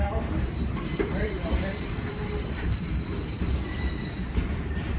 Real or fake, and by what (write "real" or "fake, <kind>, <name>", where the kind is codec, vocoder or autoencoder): fake, vocoder, BigVGAN v2